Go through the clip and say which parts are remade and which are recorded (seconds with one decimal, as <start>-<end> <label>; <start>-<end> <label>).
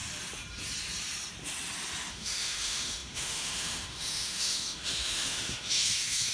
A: 0.0-2.1 recorded; 2.1-6.3 remade